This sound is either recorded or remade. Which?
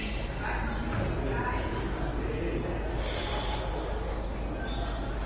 recorded